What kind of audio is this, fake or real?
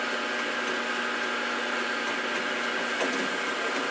real